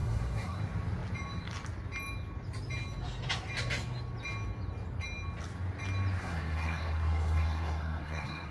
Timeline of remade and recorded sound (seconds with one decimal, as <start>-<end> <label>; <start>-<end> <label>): 0.0-0.6 remade; 0.6-6.2 recorded; 6.2-8.5 remade